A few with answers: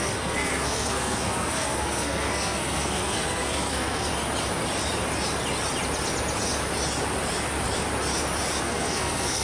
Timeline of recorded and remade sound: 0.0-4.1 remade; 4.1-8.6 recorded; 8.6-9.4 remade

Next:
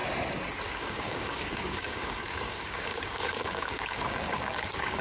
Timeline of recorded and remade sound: 0.0-0.7 recorded; 0.7-5.0 remade

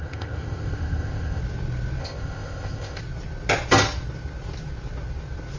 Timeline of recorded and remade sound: 0.0-1.4 remade; 1.4-2.0 recorded; 2.0-3.0 remade; 3.0-5.6 recorded

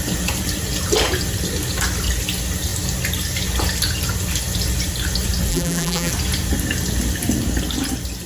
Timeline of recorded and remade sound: 0.0-5.5 recorded; 5.5-6.1 remade; 6.1-8.3 recorded

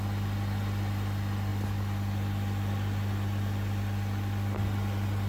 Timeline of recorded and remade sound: 0.0-5.3 recorded

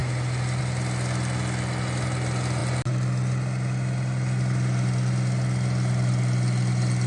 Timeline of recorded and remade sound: 0.0-7.1 recorded

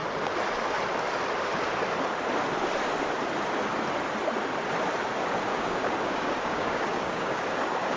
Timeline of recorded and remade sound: 0.0-5.5 recorded; 5.5-8.0 remade

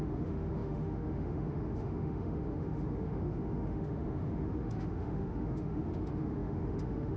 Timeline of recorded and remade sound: 0.0-7.2 remade